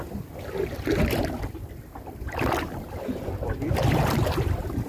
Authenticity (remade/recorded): remade